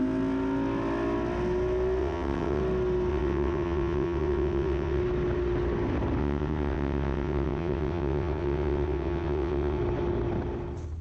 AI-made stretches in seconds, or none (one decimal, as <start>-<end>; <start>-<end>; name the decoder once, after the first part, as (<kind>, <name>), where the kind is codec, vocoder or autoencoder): 2.0-2.6 (vocoder, WaveNeXt); 3.1-5.0; 6.2-9.8